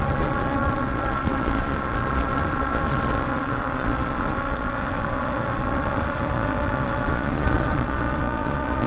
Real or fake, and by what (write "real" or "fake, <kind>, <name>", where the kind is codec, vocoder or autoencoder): fake, vocoder, Vocos